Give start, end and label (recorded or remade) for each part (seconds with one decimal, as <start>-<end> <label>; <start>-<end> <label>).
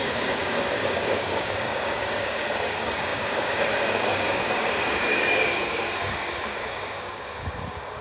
0.0-8.0 remade